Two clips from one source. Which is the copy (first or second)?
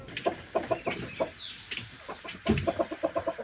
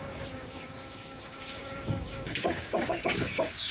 second